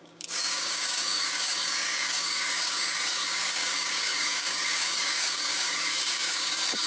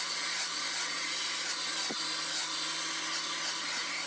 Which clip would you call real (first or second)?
second